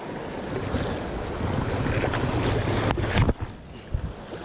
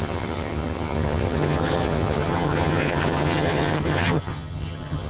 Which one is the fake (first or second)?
second